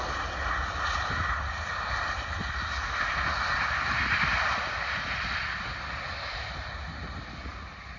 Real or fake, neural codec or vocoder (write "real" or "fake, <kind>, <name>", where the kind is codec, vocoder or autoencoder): real